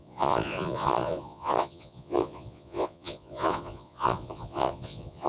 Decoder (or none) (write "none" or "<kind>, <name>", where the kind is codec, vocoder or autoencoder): vocoder, Vocos